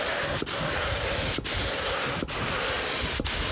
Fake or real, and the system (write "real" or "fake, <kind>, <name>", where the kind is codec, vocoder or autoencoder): real